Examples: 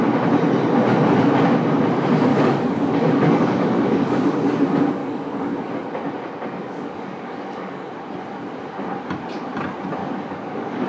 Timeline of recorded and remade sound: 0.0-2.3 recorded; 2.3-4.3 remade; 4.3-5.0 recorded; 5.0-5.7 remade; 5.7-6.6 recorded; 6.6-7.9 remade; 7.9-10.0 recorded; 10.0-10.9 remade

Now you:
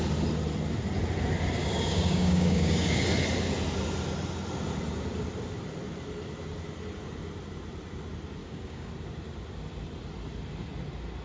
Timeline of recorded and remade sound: 0.0-1.6 recorded; 1.6-3.0 remade; 3.0-8.4 recorded; 8.4-8.9 remade; 8.9-11.2 recorded